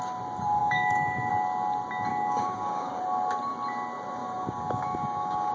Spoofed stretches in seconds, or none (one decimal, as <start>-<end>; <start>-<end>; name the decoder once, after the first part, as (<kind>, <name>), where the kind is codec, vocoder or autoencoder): 0.6-1.3 (codec, DAC); 2.1-3.0; 4.2-5.5